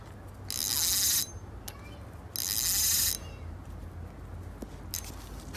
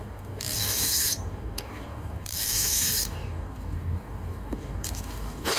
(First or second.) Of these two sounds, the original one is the first